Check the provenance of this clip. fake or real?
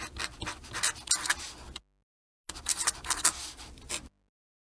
real